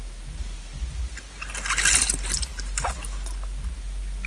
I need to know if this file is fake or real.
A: real